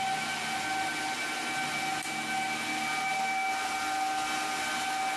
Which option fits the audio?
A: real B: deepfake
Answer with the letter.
A